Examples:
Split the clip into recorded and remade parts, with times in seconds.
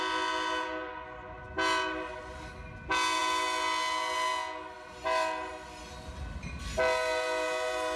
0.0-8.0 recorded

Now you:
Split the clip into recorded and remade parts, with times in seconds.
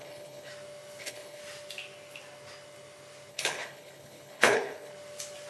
0.0-0.5 remade; 0.5-1.0 recorded; 1.0-1.4 remade; 1.4-3.3 recorded; 3.3-4.9 remade; 4.9-5.5 recorded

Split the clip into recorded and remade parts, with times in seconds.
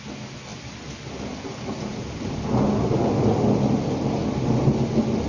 0.0-5.3 recorded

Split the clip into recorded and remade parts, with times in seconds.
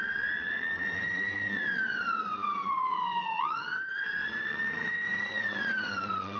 0.0-6.4 remade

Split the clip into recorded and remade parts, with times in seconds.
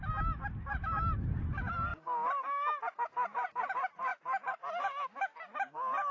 0.0-6.1 recorded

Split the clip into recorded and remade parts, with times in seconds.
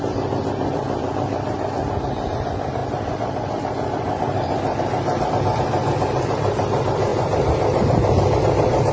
0.0-8.9 remade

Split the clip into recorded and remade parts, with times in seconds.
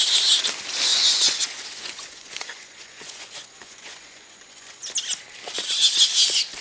0.0-0.9 recorded; 0.9-4.9 remade; 4.9-6.6 recorded